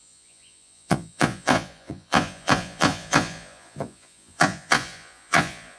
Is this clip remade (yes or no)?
yes